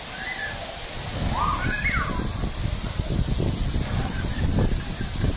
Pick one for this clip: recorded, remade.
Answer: recorded